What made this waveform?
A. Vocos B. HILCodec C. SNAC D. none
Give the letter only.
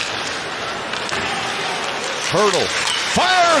D